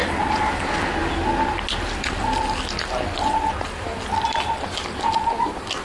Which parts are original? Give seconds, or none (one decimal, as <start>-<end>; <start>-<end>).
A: 0.0-5.8